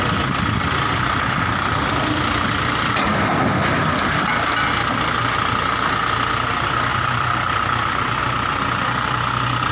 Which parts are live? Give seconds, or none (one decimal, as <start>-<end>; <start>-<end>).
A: 0.0-3.1; 4.0-6.9; 8.2-9.7